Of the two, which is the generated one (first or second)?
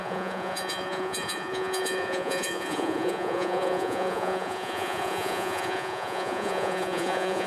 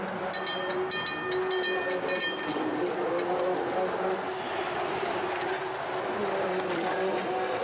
first